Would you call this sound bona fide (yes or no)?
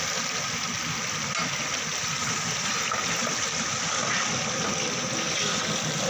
yes